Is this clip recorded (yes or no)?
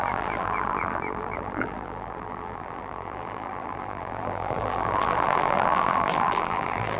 no